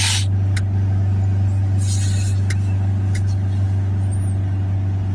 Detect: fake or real real